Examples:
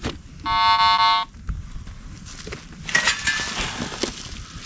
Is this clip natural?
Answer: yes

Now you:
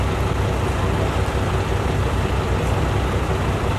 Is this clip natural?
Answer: yes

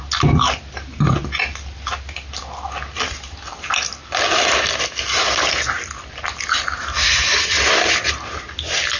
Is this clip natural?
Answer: yes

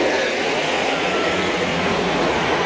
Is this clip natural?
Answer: no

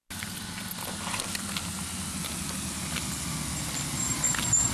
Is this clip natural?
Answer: yes